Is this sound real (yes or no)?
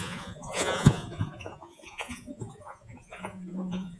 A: no